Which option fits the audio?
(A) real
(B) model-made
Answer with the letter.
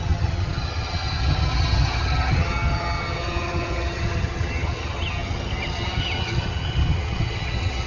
B